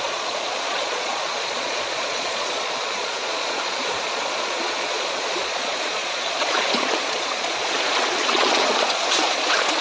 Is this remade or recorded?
remade